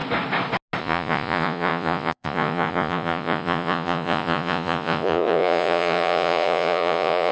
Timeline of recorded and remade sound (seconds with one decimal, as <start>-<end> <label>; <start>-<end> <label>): 0.0-0.8 recorded; 0.8-7.3 remade